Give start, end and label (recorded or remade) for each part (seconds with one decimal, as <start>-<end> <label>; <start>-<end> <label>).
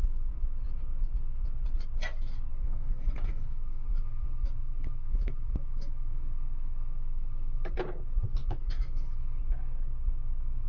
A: 0.0-2.5 recorded; 2.5-7.7 remade; 7.7-8.4 recorded; 8.4-9.4 remade; 9.4-10.7 recorded